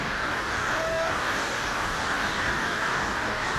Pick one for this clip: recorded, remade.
remade